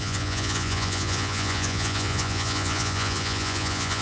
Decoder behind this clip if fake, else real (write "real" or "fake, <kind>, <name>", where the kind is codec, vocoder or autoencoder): fake, vocoder, Vocos